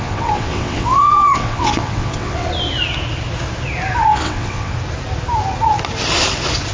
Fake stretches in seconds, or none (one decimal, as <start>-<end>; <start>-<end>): 0.0-2.5; 4.1-4.7